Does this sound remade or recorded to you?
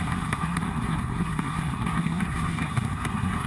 remade